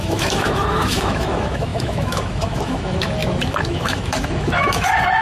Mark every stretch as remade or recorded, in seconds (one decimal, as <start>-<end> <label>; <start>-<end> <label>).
0.0-5.2 remade